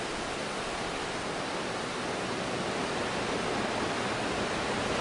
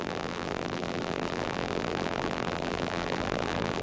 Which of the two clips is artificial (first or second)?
second